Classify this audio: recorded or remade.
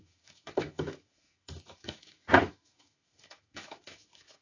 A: remade